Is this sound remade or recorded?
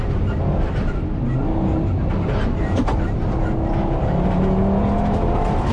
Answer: recorded